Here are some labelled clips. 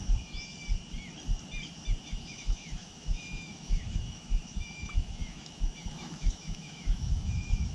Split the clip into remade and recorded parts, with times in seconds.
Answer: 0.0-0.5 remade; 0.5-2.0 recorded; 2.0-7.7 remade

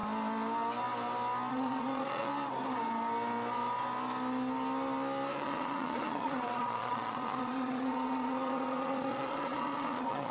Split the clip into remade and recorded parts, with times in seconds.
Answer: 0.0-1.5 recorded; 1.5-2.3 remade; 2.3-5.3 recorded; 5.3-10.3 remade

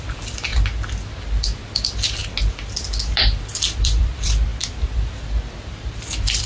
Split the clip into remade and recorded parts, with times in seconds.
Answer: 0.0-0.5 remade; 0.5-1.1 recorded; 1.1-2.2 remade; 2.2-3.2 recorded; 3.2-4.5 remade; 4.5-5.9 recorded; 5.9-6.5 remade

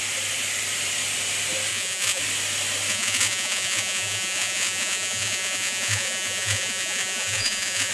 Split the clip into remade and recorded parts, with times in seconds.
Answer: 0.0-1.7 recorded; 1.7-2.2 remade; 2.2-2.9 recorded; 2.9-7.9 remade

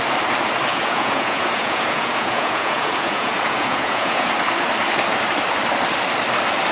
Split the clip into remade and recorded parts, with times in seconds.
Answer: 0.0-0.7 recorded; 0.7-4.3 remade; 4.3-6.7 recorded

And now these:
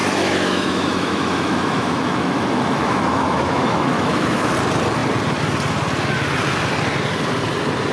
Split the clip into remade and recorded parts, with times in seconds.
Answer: 0.0-4.5 remade; 4.5-7.9 recorded